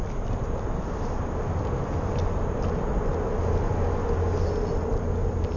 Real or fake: real